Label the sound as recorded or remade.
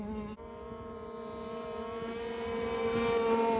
recorded